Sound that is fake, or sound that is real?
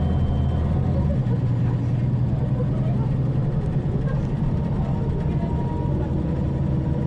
real